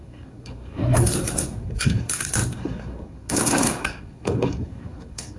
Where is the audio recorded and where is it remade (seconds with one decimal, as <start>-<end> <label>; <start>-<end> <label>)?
0.0-5.4 remade